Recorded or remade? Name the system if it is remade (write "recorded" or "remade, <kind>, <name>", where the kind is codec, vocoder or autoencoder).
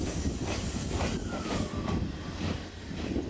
recorded